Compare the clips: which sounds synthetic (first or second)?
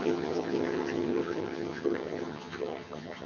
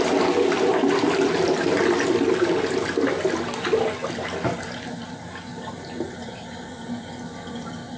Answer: first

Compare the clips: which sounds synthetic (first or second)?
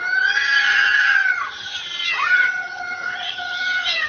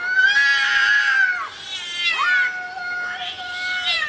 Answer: first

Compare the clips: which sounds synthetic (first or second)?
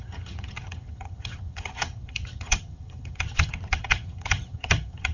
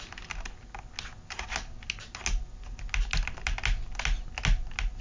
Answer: first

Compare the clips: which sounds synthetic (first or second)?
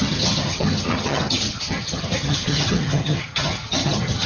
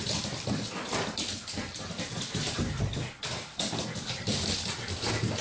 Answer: first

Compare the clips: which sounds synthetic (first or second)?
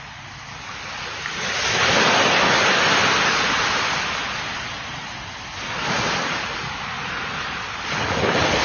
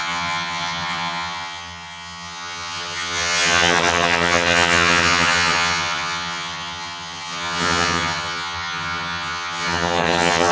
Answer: second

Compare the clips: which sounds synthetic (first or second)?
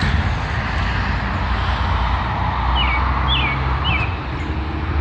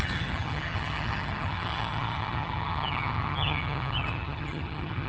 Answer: second